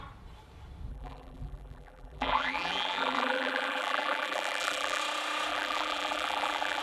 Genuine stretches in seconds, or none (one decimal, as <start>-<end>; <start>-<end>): 0.0-0.9; 5.0-5.5